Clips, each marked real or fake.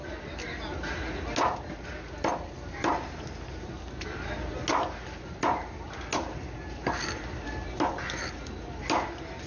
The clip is real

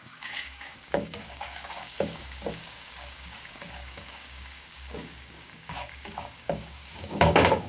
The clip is fake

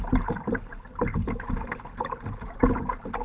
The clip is real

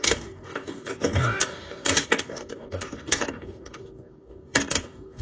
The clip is fake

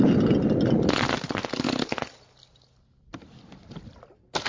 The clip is real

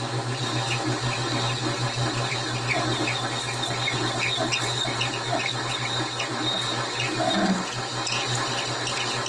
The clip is real